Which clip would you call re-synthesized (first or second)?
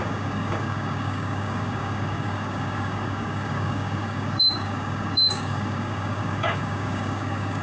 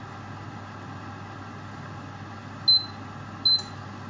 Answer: first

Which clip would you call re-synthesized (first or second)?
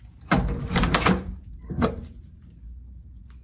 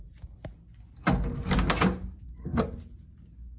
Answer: first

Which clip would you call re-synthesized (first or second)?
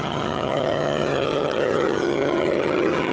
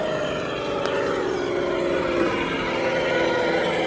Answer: first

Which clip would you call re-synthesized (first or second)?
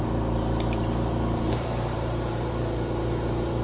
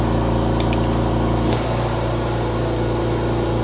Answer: first